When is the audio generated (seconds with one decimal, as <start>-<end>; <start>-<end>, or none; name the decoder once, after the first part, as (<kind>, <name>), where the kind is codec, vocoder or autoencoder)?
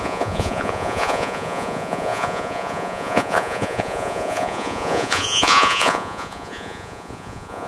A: 0.0-7.7 (vocoder, Vocos)